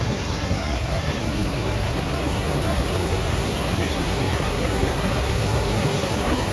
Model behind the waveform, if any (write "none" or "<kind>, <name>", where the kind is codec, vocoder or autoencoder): codec, SNAC